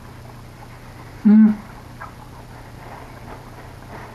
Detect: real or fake real